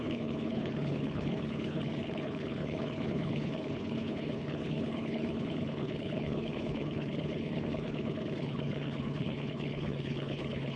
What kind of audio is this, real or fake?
fake